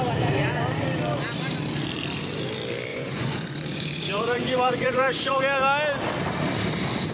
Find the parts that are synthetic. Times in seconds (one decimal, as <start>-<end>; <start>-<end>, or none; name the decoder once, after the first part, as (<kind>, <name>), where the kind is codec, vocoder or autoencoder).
2.9-5.4 (vocoder, Vocos)